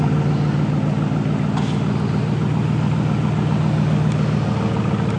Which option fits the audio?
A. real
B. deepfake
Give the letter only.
A